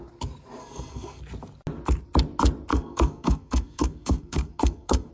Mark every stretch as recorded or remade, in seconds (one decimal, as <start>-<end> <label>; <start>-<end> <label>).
0.0-0.6 recorded; 0.6-1.2 remade; 1.2-2.7 recorded; 2.7-5.1 remade